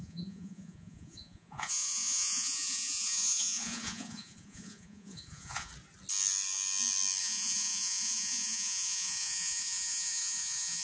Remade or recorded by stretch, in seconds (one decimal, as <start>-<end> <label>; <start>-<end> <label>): 0.0-5.7 remade; 5.7-7.2 recorded; 7.2-10.8 remade

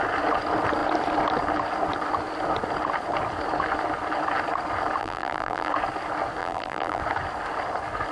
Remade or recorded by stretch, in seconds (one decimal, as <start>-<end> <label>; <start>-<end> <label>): 0.0-5.0 recorded; 5.0-5.7 remade; 5.7-6.4 recorded; 6.4-7.0 remade; 7.0-8.1 recorded

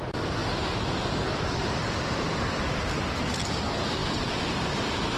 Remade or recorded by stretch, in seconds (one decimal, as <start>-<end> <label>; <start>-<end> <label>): 0.0-0.4 recorded; 0.4-1.8 remade; 1.8-4.0 recorded; 4.0-5.2 remade

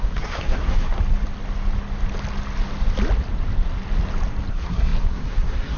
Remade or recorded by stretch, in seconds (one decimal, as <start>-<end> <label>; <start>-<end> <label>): 0.0-1.0 remade; 1.0-4.5 recorded; 4.5-5.8 remade

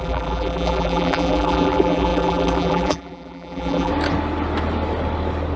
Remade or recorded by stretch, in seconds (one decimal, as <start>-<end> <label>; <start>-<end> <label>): 0.0-3.9 remade; 3.9-5.6 recorded

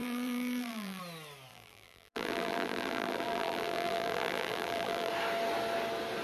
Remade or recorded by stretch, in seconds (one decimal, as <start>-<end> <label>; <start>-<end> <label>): 0.0-1.0 remade; 1.0-1.5 recorded; 1.5-5.1 remade; 5.1-6.2 recorded